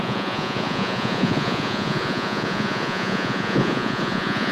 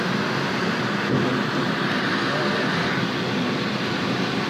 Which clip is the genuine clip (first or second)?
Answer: second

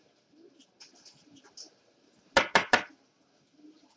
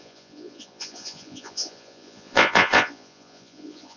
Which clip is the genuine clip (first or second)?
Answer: first